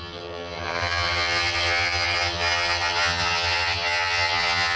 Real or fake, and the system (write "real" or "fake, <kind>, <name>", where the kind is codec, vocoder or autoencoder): fake, vocoder, HiFi-GAN